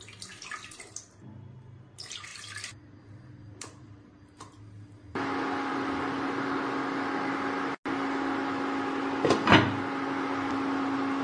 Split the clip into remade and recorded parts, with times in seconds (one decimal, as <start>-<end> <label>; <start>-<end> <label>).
0.0-11.2 recorded

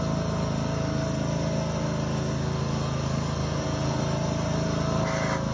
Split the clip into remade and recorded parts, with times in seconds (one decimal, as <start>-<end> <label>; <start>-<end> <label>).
0.0-3.4 recorded; 3.4-4.0 remade; 4.0-5.5 recorded

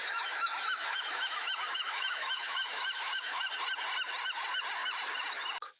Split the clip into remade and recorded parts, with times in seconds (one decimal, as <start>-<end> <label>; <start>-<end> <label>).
0.0-3.5 remade; 3.5-5.8 recorded